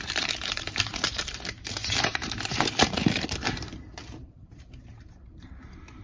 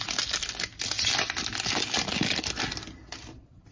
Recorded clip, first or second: second